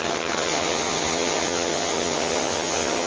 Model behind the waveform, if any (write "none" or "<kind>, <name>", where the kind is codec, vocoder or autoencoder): vocoder, HiFi-GAN